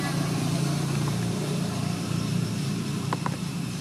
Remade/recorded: remade